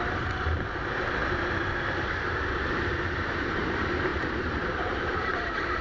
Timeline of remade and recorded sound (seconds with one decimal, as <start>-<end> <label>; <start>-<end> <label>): 0.0-1.2 remade; 1.2-3.2 recorded; 3.2-5.8 remade